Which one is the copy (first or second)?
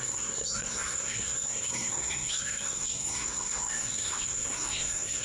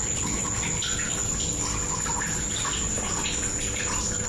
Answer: first